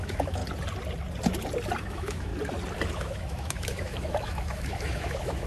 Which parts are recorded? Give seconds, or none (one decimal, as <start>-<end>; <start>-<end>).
0.4-1.8; 2.3-2.9